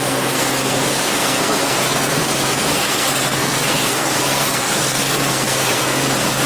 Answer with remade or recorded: remade